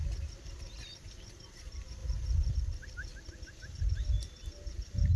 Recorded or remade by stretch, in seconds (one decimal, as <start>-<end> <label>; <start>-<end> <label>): 0.0-0.7 recorded; 0.7-2.0 remade; 2.0-2.5 recorded; 2.5-3.1 remade; 3.1-5.2 recorded